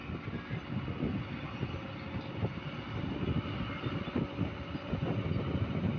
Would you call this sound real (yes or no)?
yes